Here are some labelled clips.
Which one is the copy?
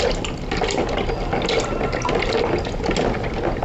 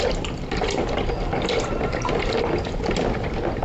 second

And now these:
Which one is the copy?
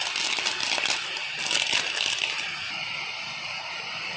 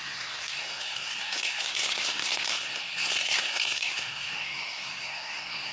second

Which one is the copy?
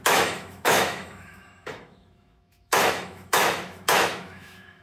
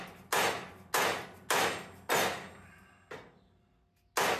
first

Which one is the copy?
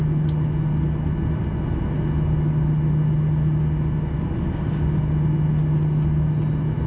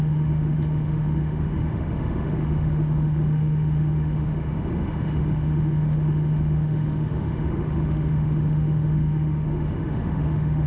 second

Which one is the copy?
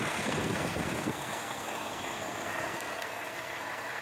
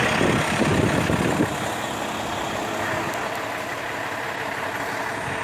first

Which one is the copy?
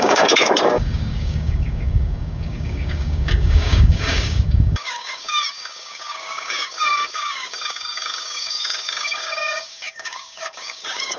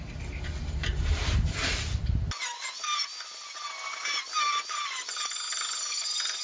first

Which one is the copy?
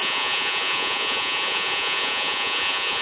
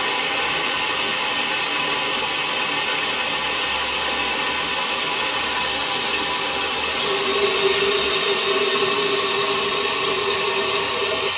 first